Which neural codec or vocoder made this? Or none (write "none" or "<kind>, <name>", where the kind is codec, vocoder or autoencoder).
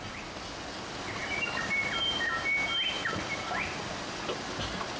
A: none